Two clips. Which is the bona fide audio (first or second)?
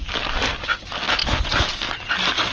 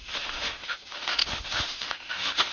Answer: first